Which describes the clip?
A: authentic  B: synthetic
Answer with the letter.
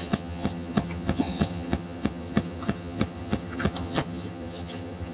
B